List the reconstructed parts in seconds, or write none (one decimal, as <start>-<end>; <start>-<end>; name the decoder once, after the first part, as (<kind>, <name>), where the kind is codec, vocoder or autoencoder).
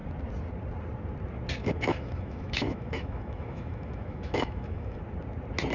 1.6-5.0 (autoencoder, DAC-VAE)